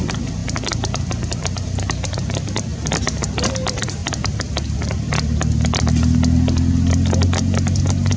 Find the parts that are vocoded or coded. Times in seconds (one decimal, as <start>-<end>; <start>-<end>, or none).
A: none